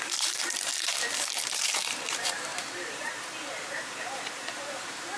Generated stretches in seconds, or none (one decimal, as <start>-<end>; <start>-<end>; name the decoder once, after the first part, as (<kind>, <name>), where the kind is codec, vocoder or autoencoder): 0.0-0.7 (vocoder, BigVGAN v2); 1.5-5.2